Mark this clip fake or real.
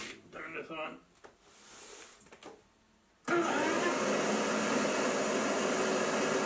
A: real